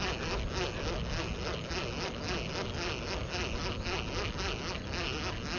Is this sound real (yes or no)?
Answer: yes